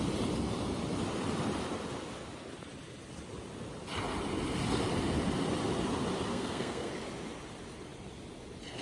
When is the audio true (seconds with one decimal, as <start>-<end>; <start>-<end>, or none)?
0.0-6.3; 6.9-8.8